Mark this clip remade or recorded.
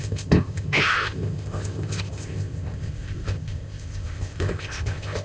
remade